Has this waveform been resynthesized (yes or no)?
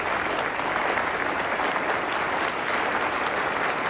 yes